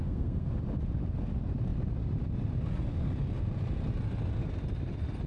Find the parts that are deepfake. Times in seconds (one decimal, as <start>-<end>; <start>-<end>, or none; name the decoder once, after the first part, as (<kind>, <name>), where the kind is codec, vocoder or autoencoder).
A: 0.0-0.6 (codec, SNAC)